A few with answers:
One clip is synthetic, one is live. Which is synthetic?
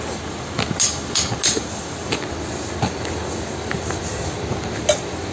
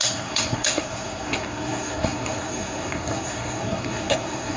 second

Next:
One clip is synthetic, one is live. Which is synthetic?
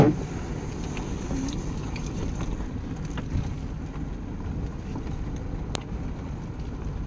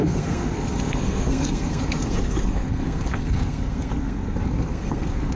second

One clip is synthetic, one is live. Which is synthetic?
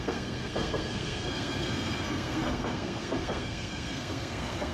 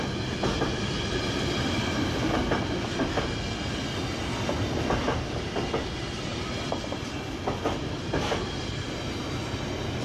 first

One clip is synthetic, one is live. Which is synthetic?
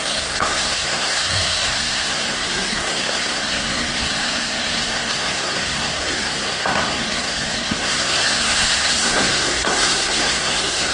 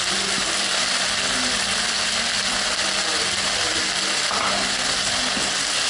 first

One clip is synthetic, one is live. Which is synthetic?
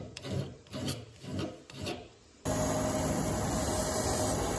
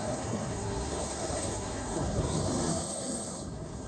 second